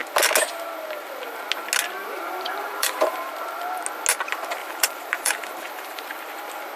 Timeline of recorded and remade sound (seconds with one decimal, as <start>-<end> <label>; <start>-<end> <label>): 0.0-2.0 recorded; 2.0-3.3 remade; 3.3-4.6 recorded; 4.6-6.1 remade; 6.1-6.8 recorded